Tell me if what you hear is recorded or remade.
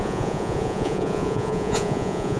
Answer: remade